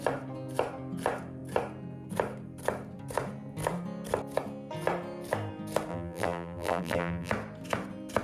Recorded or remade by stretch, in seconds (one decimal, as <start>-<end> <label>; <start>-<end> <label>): 0.0-5.9 recorded; 5.9-7.3 remade; 7.3-8.2 recorded